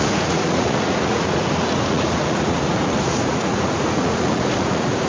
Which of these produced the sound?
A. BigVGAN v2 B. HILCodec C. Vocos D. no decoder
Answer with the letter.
C